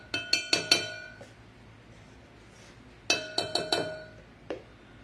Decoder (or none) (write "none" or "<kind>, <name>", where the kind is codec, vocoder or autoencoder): none